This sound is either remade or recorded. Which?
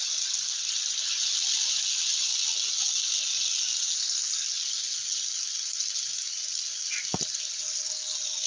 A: recorded